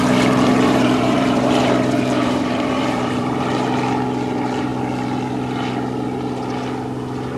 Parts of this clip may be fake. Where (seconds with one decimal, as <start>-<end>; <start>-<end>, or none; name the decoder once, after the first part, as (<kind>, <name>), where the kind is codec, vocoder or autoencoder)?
0.0-3.9 (vocoder, BigVGAN v2)

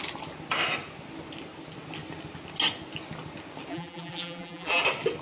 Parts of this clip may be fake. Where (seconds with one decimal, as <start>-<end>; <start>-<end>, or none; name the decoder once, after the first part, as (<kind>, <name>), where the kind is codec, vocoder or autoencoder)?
3.7-4.8 (vocoder, BigVGAN v2)

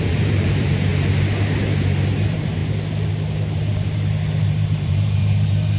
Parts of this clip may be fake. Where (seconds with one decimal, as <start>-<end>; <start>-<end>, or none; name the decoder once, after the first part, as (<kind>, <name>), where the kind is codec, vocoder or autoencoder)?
0.0-0.9 (vocoder, BigVGAN v2); 2.2-2.6; 4.4-5.8